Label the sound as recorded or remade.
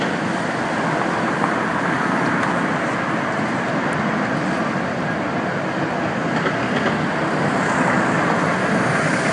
recorded